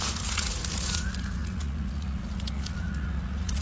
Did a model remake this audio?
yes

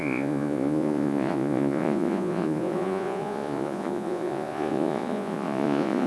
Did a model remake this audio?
yes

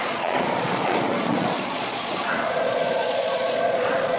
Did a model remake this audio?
yes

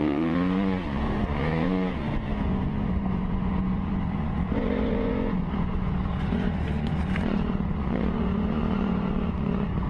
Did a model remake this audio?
yes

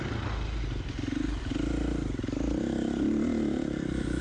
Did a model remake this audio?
no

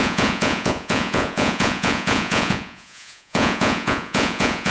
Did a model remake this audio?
yes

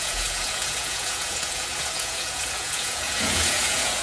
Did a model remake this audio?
yes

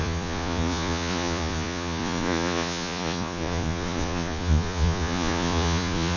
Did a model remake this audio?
yes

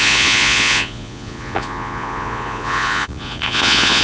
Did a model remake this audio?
yes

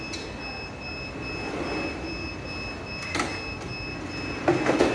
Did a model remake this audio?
no